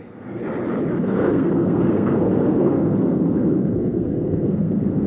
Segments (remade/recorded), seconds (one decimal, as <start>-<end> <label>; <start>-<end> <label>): 0.0-0.4 remade; 0.4-1.0 recorded; 1.0-5.1 remade